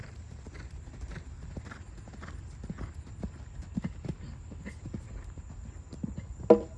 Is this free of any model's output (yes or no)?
yes